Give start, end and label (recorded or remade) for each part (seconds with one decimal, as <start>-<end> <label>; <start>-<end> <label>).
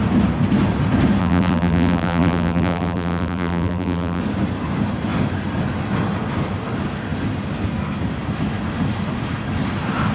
0.0-1.2 recorded; 1.2-4.2 remade; 4.2-10.1 recorded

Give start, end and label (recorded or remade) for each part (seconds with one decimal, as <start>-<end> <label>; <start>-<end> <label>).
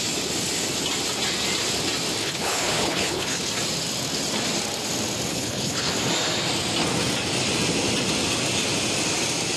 0.0-2.2 recorded; 2.2-3.5 remade; 3.5-5.3 recorded; 5.3-5.9 remade; 5.9-9.6 recorded